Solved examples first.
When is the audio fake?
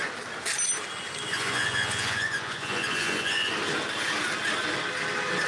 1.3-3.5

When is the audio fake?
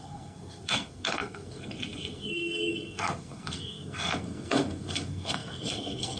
0.0-6.2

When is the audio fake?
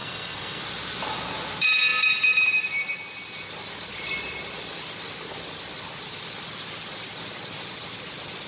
0.0-0.6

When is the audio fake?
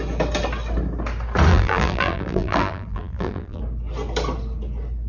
1.5-3.6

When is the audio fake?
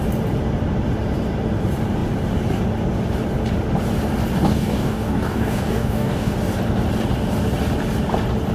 4.5-6.3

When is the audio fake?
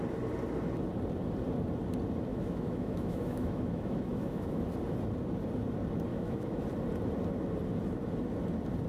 2.3-4.6; 6.1-6.6